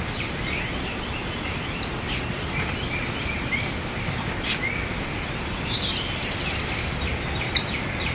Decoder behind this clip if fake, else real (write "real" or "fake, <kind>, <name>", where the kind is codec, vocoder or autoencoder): real